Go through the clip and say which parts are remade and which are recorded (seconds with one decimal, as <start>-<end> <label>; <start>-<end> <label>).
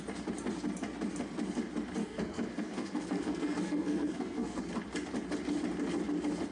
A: 0.0-2.0 recorded; 2.0-4.6 remade; 4.6-6.5 recorded